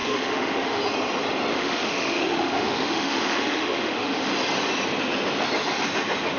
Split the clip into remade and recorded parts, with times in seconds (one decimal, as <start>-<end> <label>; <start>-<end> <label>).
0.0-0.8 remade; 0.8-1.5 recorded; 1.5-4.3 remade; 4.3-6.4 recorded